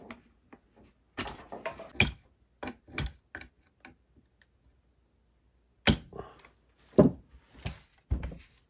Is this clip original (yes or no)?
yes